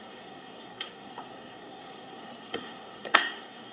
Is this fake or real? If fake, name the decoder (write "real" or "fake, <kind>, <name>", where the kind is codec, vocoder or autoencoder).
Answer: fake, codec, SNAC